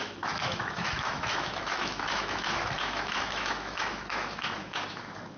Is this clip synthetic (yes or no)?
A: yes